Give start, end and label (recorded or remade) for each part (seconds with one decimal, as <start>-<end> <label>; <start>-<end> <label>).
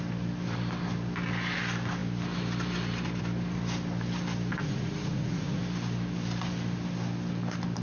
0.0-4.5 recorded; 4.5-5.6 remade; 5.6-7.8 recorded